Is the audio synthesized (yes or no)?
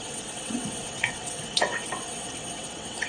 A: yes